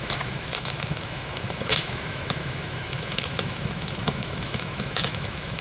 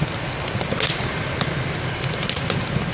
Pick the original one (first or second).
second